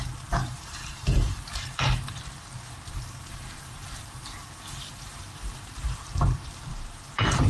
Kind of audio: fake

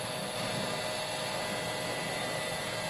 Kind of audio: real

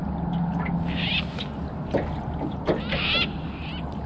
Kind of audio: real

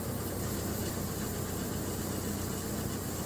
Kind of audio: real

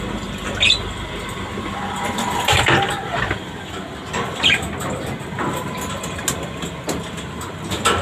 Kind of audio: real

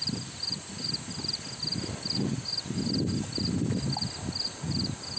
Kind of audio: real